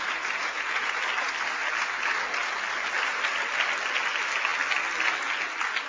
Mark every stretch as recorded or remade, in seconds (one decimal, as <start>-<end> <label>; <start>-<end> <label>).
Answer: 0.0-5.9 recorded